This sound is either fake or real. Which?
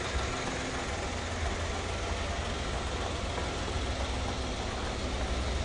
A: real